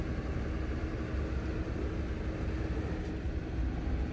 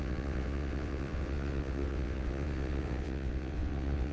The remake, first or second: second